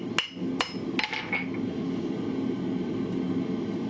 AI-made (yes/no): no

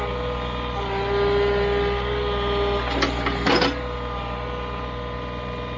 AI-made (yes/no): no